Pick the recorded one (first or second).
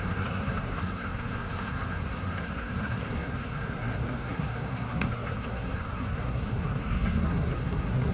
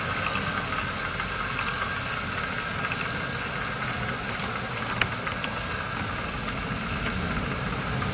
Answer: second